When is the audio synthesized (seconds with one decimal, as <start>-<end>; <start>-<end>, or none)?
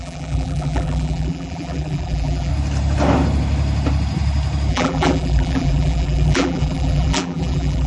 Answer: 0.0-2.5; 4.7-7.9